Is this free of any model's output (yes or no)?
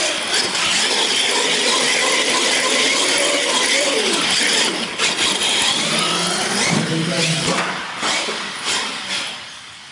yes